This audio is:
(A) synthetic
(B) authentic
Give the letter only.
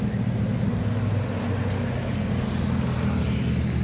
B